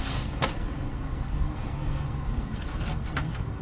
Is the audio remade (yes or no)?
yes